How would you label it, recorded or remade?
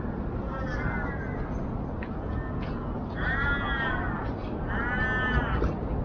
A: recorded